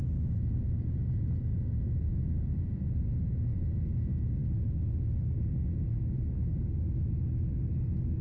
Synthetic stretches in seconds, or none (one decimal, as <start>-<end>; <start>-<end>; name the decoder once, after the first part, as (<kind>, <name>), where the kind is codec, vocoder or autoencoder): 0.4-3.8 (vocoder, Vocos)